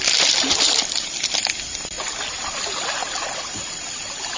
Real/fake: real